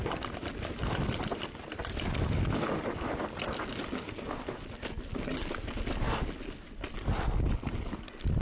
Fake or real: real